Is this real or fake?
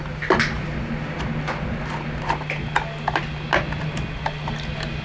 real